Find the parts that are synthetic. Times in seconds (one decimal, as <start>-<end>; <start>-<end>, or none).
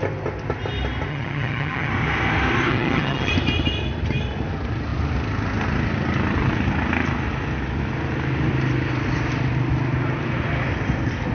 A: 1.1-1.9; 2.7-3.3